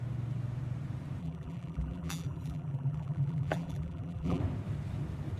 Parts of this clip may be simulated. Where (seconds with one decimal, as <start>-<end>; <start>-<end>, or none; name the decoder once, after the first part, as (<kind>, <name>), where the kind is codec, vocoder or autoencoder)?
1.2-4.4 (vocoder, BigVGAN v2)